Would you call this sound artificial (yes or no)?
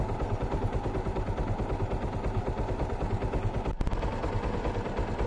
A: no